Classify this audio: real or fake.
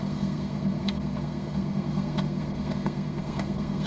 fake